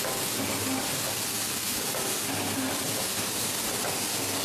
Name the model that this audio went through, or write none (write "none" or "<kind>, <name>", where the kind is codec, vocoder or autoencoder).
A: none